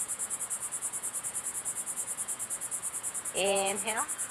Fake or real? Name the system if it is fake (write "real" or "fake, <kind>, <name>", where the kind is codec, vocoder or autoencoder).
fake, vocoder, Vocos